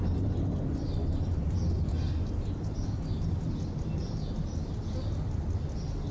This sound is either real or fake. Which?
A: real